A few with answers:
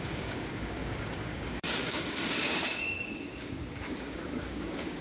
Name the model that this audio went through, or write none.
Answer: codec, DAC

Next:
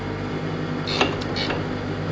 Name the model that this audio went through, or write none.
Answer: none